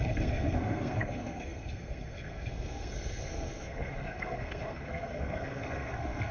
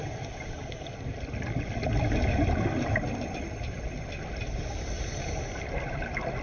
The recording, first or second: second